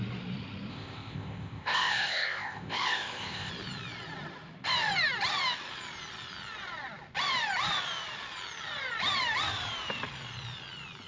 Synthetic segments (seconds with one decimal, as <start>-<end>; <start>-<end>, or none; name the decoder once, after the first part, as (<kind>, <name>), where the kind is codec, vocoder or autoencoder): 0.7-3.5 (codec, ZipCodec)